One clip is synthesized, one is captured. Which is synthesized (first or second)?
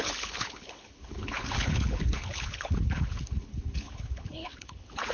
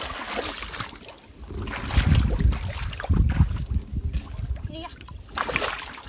first